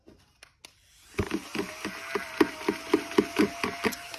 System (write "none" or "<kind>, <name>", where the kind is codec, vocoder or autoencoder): none